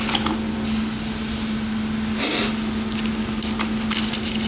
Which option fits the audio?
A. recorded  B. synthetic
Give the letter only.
A